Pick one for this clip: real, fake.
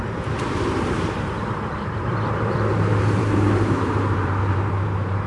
fake